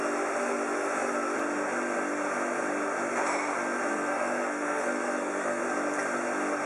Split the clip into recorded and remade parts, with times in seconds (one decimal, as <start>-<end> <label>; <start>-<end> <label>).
0.0-3.9 recorded; 3.9-5.6 remade; 5.6-6.7 recorded

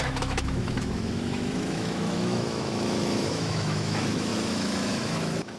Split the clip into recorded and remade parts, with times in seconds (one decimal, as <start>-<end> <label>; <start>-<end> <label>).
0.0-5.6 remade

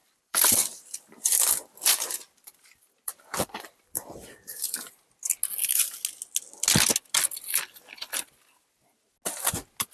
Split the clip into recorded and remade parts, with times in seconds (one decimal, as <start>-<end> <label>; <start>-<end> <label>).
0.0-4.9 remade; 4.9-9.9 recorded